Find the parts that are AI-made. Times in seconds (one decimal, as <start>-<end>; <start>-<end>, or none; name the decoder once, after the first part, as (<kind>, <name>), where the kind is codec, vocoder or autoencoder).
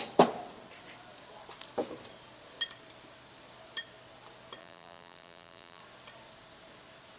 4.6-5.8 (vocoder, BigVGAN v2)